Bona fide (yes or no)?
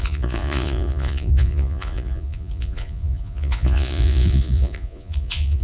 no